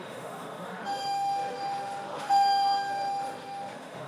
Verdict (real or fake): fake